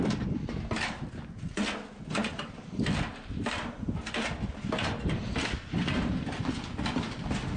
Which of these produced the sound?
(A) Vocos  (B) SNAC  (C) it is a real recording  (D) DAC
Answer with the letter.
C